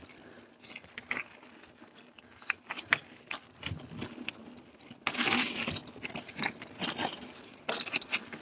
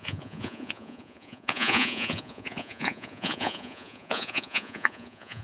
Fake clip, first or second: second